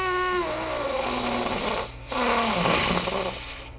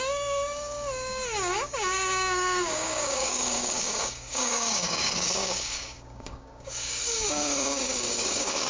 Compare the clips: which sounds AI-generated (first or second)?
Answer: second